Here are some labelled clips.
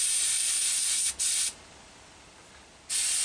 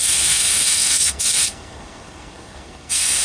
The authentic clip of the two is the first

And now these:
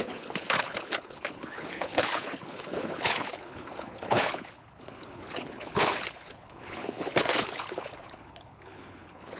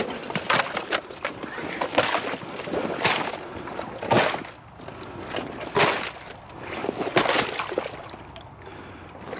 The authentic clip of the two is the second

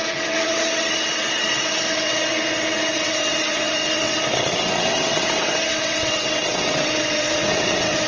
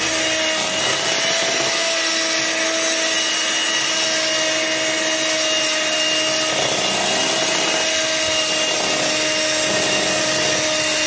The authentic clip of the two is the second